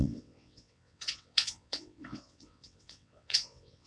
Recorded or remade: remade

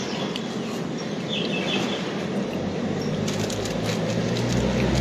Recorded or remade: recorded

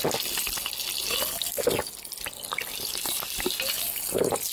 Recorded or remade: recorded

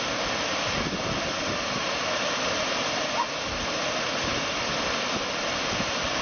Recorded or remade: recorded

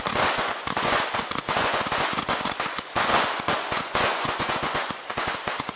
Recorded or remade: remade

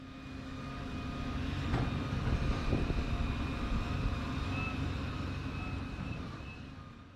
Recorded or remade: recorded